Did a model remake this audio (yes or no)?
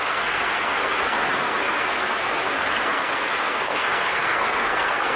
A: yes